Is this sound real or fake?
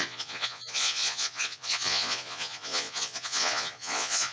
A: fake